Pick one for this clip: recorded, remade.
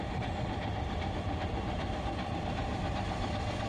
recorded